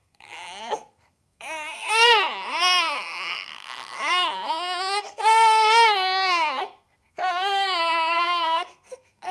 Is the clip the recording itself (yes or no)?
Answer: no